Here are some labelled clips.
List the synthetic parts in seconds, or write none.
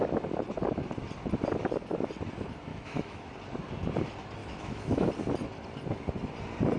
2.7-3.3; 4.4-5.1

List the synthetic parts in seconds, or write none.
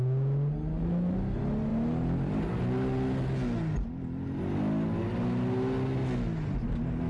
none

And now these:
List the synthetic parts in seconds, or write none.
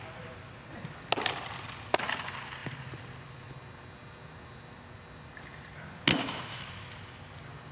6.1-6.6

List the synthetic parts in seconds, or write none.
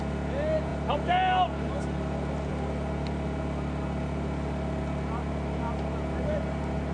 none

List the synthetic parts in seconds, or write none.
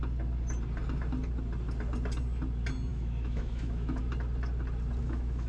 2.9-4.0; 5.0-5.5